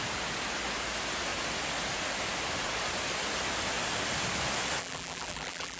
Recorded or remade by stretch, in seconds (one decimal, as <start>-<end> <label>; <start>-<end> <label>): 0.0-4.8 recorded; 4.8-5.8 remade